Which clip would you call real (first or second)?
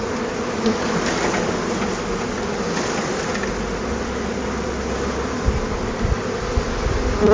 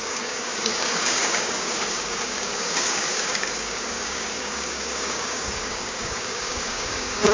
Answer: first